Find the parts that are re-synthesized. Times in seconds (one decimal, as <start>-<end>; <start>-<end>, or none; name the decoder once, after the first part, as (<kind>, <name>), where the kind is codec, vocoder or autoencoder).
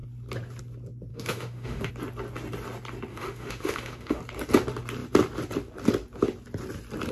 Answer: 1.1-1.9 (autoencoder, DAC-VAE); 3.1-4.2